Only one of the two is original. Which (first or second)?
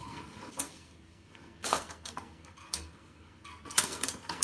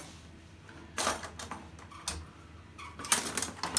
second